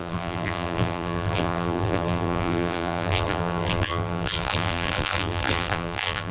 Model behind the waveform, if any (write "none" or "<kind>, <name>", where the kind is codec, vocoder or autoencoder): vocoder, BigVGAN v2